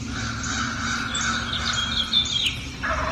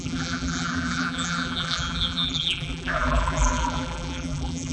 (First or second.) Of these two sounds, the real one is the first